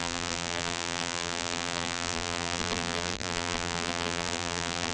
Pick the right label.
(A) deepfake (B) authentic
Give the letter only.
A